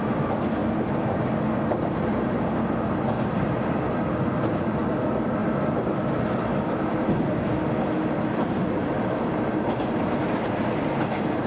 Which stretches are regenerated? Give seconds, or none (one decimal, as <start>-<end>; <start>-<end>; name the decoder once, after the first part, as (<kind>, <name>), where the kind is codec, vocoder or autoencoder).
none